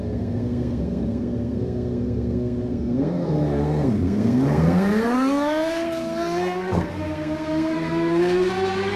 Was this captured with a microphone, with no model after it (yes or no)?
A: no